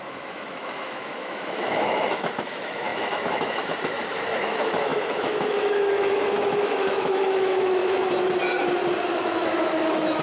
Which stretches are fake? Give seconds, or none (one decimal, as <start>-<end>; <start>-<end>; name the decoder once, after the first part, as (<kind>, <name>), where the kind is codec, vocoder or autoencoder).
0.0-7.8 (autoencoder, DAC-VAE); 9.1-10.2